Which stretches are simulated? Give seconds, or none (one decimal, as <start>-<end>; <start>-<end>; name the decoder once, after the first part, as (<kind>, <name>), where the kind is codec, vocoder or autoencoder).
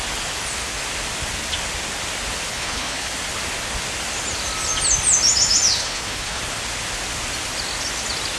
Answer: 2.5-3.1 (codec, HILCodec); 5.8-6.4